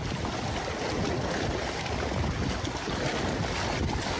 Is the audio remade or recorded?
recorded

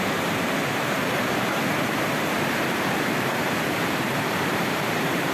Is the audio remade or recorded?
remade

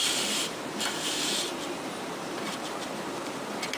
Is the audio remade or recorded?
remade